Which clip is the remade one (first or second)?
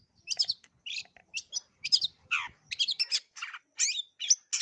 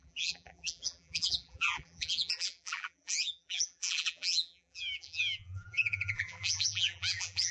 second